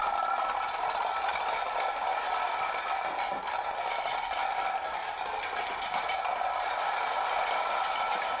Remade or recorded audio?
recorded